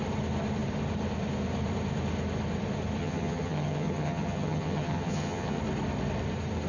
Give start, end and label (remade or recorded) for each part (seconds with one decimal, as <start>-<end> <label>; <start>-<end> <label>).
0.0-3.0 recorded; 3.0-5.6 remade; 5.6-6.7 recorded